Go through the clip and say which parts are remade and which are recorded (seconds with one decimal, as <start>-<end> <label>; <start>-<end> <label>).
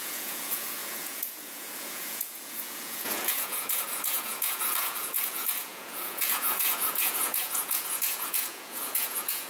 0.0-9.5 remade